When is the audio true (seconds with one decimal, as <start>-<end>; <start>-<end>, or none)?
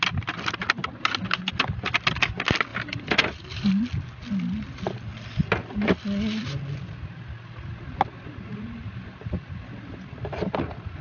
0.0-2.7; 3.7-8.8; 10.4-11.0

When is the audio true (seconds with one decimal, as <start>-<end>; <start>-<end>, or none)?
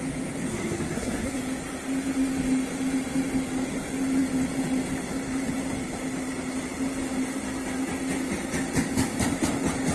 0.0-0.5; 1.4-9.9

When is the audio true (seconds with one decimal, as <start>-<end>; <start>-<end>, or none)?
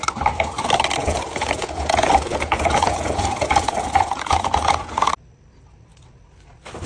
0.0-1.0; 5.1-6.9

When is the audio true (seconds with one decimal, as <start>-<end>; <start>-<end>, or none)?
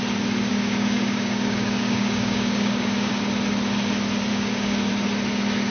0.0-0.5; 3.1-4.3; 4.9-5.7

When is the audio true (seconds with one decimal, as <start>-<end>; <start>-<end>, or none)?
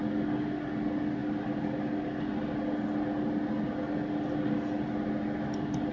0.0-5.9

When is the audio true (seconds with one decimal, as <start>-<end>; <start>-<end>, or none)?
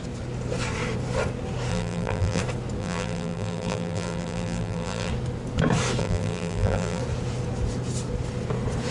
0.0-1.7; 2.4-2.8; 5.1-6.0; 7.0-8.9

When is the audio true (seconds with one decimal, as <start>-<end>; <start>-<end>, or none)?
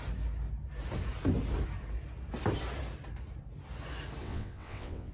0.0-4.2